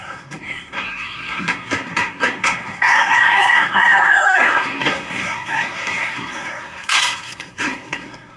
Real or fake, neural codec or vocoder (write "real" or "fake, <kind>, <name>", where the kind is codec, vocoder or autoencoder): fake, codec, SNAC